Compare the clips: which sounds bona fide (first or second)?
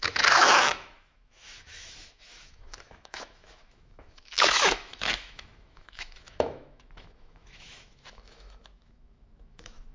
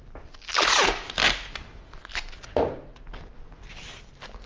second